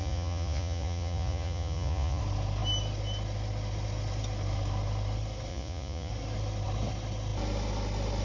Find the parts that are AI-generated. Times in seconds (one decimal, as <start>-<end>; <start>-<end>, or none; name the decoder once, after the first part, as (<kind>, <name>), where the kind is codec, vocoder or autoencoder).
0.0-2.2 (vocoder, Vocos); 5.5-6.1